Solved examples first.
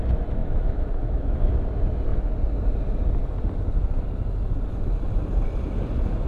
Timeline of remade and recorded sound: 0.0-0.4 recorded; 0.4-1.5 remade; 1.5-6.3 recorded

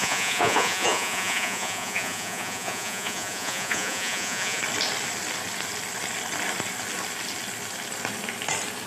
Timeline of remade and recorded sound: 0.0-4.6 remade; 4.6-8.9 recorded

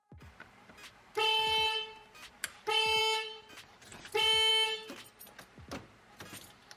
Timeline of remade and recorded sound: 0.0-6.8 recorded